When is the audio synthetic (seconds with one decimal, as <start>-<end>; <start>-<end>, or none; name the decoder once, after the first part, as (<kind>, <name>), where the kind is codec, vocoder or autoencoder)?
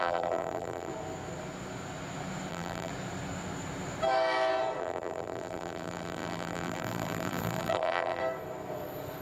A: 0.0-0.9 (vocoder, BigVGAN v2); 2.5-2.9; 4.8-8.2